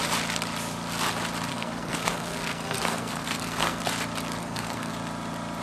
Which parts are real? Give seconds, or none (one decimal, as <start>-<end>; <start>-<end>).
0.0-1.5; 3.8-4.4; 4.9-5.6

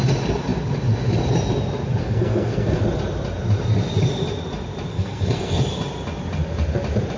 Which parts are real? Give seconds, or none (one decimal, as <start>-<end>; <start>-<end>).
0.0-2.0; 2.8-4.9; 5.6-7.2

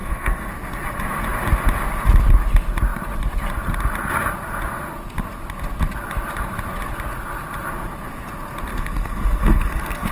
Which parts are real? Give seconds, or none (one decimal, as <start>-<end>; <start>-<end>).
0.5-8.7

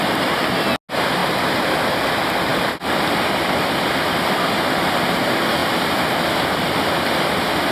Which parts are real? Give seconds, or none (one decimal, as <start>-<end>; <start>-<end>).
0.0-7.7

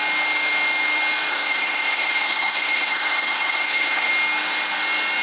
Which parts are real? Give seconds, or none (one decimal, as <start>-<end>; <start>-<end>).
0.0-1.3; 4.1-5.2